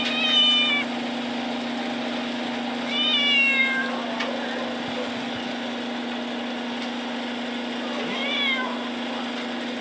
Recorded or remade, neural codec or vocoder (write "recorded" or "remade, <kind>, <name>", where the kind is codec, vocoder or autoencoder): recorded